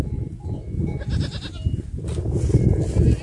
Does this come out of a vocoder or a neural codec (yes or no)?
no